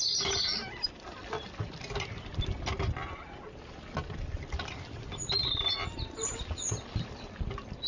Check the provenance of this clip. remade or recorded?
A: recorded